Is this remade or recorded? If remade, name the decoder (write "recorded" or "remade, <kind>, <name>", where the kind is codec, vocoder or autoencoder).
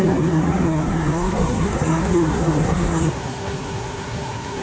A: remade, codec, SNAC